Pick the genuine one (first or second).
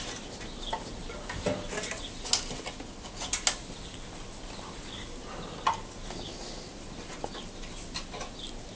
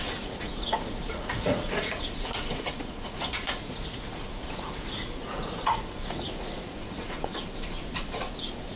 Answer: first